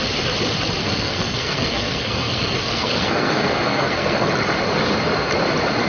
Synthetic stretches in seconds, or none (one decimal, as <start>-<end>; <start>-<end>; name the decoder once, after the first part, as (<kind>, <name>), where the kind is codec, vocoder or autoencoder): 0.8-4.3 (codec, SNAC)